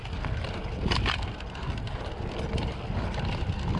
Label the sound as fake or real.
real